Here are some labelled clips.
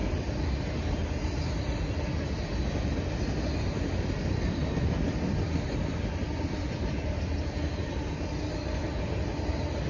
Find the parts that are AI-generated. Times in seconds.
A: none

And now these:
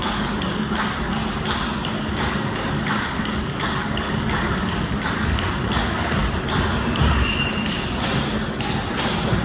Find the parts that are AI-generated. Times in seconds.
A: 0.0-1.2 (codec, DAC); 2.0-6.2

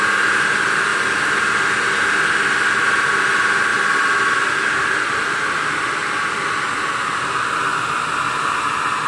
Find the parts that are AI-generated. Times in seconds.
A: 0.9-1.5 (vocoder, BigVGAN v2); 3.7-6.3

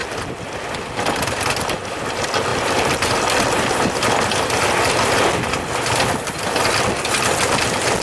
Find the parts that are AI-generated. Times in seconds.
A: 2.5-3.1 (vocoder, BigVGAN v2)

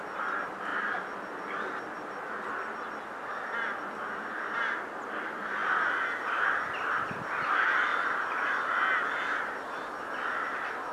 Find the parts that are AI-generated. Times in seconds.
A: 7.9-8.7 (vocoder, BigVGAN v2)